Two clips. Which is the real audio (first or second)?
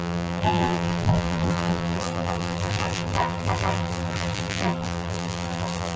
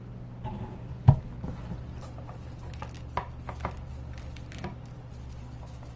second